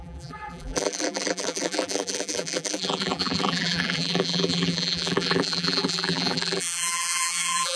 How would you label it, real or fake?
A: fake